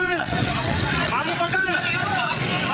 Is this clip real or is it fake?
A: fake